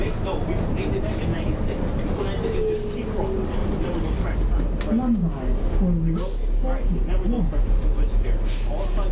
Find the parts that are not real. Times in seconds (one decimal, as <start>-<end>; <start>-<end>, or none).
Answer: 1.3-2.2; 3.6-4.6